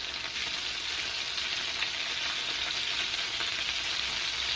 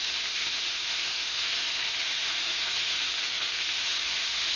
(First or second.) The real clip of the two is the first